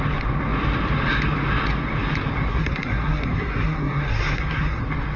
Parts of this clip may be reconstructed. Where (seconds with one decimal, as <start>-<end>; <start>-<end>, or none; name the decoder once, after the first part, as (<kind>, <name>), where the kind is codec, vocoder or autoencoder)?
2.5-4.8 (codec, SNAC)